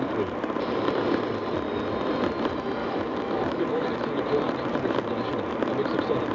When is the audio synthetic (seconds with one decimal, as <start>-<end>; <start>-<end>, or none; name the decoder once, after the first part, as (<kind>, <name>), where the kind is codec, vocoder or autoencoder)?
2.8-4.0 (autoencoder, DAC-VAE)